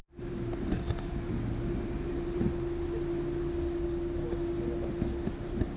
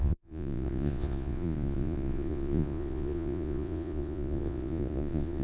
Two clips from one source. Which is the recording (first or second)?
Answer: first